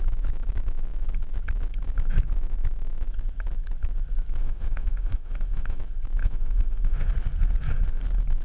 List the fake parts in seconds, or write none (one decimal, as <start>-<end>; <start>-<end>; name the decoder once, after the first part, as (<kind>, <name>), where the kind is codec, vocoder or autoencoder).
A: 4.4-5.8 (autoencoder, DAC-VAE); 6.2-7.1